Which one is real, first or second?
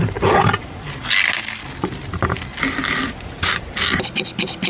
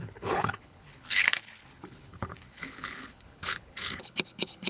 first